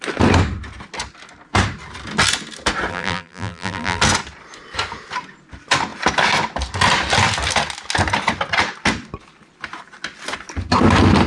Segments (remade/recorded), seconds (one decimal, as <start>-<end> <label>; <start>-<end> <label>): 0.0-2.9 recorded; 2.9-4.0 remade; 4.0-11.3 recorded